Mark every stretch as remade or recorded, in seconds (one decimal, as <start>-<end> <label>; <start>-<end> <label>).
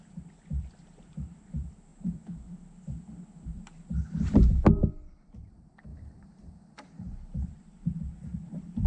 0.0-1.9 remade; 1.9-5.1 recorded; 5.1-5.9 remade; 5.9-7.5 recorded; 7.5-8.9 remade